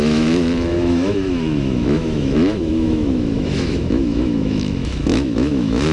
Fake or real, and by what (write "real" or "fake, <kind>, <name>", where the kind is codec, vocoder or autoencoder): fake, autoencoder, DAC-VAE